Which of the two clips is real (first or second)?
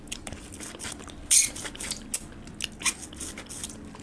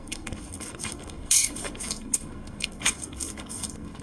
first